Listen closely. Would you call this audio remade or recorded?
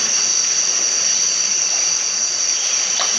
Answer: recorded